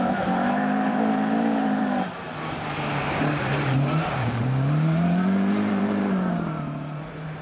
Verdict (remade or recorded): remade